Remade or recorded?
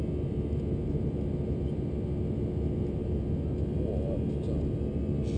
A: recorded